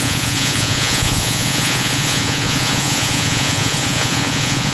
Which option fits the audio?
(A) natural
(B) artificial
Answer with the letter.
B